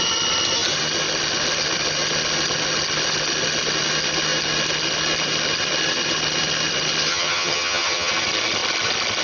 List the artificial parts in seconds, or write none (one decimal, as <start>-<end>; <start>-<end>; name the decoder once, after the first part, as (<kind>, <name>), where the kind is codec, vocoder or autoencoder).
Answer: 7.1-8.1 (vocoder, HiFi-GAN)